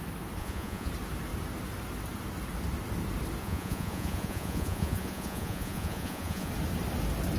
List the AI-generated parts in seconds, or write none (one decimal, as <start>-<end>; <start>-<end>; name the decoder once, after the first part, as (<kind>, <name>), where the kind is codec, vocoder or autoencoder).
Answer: 0.4-0.9 (vocoder, Vocos); 3.4-6.5